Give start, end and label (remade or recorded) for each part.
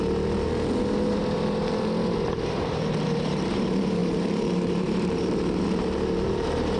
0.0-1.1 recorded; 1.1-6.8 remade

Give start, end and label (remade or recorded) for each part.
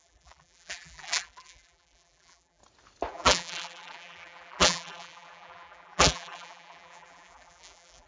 0.0-2.6 remade; 2.6-3.1 recorded; 3.1-8.1 remade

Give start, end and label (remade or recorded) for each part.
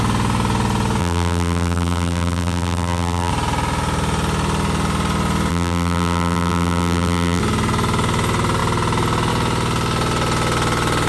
0.0-1.0 recorded; 1.0-3.3 remade; 3.3-5.5 recorded; 5.5-7.4 remade; 7.4-11.1 recorded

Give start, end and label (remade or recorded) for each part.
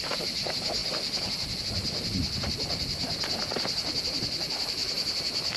0.0-4.8 recorded; 4.8-5.6 remade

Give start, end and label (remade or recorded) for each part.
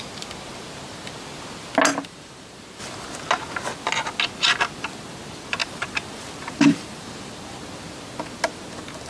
0.0-1.9 recorded; 1.9-2.8 remade; 2.8-5.6 recorded; 5.6-7.1 remade; 7.1-9.1 recorded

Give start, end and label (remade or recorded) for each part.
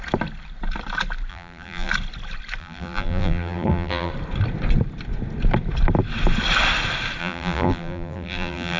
0.0-1.3 recorded; 1.3-1.9 remade; 1.9-2.6 recorded; 2.6-4.1 remade; 4.1-7.2 recorded; 7.2-8.8 remade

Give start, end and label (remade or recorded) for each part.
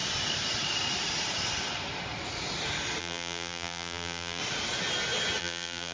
0.0-3.0 recorded; 3.0-4.4 remade; 4.4-5.4 recorded; 5.4-5.9 remade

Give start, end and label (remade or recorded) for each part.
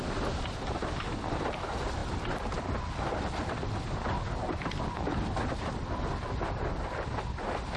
0.0-7.8 recorded